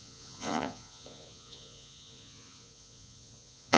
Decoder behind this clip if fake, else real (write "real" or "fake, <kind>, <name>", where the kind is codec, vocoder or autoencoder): fake, vocoder, Vocos